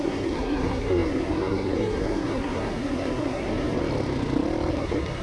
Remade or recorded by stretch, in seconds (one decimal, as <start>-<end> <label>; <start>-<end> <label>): 0.0-3.8 remade; 3.8-4.7 recorded; 4.7-5.2 remade